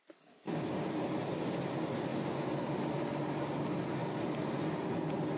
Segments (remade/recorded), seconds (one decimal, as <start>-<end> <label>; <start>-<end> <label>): 0.0-5.4 recorded